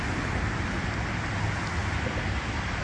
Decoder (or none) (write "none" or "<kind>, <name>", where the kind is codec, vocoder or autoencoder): none